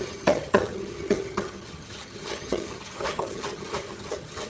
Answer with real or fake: fake